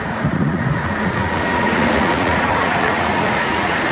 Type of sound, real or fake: fake